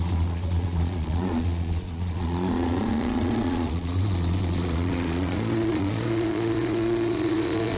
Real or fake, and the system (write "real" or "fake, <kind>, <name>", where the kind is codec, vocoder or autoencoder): fake, vocoder, Vocos